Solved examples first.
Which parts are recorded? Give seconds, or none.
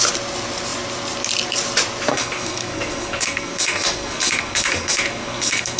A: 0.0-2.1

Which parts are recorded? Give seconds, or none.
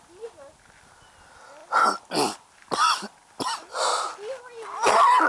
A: 0.0-5.3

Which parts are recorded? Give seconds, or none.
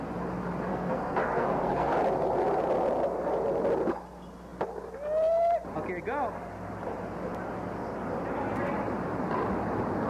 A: 0.0-0.7; 1.9-10.1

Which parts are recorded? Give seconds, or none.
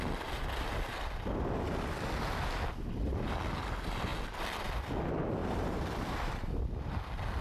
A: 0.0-7.4